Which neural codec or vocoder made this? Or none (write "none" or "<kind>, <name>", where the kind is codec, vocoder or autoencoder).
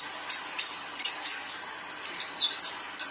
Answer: none